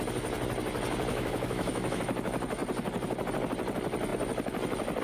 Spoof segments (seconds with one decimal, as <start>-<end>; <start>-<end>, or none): 1.1-2.0